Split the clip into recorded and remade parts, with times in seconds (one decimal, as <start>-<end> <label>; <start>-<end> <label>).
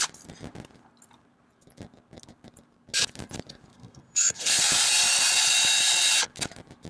0.0-3.7 recorded; 3.7-4.7 remade; 4.7-6.9 recorded